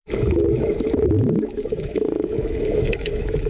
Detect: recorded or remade remade